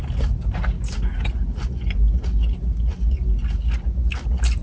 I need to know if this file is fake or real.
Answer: real